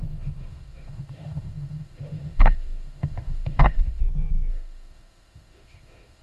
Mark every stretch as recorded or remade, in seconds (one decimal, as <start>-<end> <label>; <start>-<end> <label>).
0.0-4.0 remade; 4.0-4.5 recorded; 4.5-6.2 remade